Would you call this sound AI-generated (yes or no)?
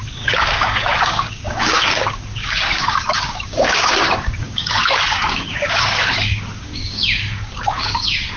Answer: yes